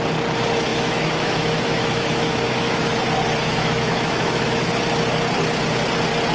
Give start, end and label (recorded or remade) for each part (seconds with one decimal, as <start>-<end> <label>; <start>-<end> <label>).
0.0-0.7 recorded; 0.7-3.0 remade; 3.0-3.4 recorded; 3.4-4.7 remade; 4.7-6.3 recorded